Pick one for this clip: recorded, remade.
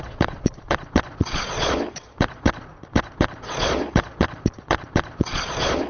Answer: remade